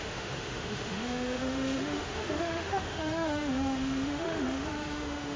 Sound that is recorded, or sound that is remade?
remade